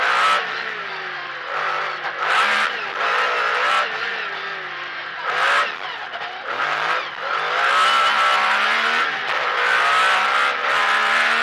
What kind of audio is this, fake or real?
real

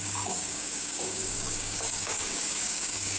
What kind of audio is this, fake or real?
fake